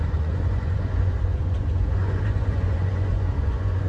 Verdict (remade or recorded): remade